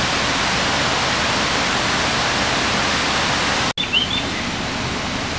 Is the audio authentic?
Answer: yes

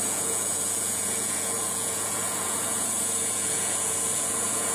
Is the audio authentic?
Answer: no